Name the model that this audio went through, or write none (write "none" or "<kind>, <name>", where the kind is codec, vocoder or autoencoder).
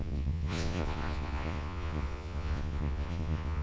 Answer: vocoder, Vocos